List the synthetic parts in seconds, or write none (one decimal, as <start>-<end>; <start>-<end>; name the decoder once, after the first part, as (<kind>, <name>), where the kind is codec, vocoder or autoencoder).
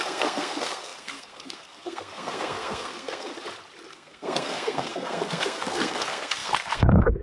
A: 0.0-3.3 (codec, SNAC); 3.9-7.2